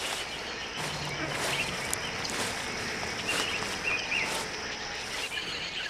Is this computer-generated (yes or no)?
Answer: no